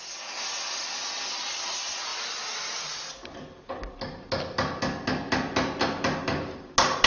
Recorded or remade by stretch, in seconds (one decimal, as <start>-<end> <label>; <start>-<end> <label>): 0.0-7.1 recorded